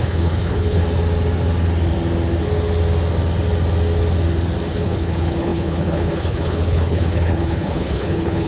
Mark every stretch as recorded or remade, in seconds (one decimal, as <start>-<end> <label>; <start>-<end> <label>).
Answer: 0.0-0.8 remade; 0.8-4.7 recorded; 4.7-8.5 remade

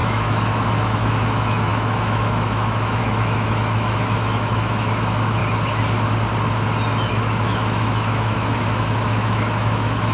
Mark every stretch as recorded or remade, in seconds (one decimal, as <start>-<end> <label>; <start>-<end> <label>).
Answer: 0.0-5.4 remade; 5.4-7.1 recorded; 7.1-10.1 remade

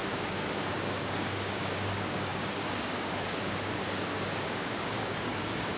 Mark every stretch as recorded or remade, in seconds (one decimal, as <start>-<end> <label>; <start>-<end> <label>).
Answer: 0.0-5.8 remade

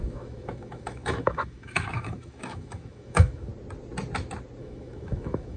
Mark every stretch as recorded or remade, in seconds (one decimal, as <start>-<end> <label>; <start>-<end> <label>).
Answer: 0.0-3.5 remade; 3.5-4.6 recorded; 4.6-5.6 remade